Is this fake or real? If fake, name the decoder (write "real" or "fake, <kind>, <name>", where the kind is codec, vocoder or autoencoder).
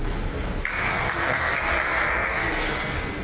fake, codec, SNAC